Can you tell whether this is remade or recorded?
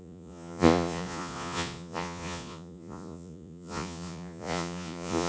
remade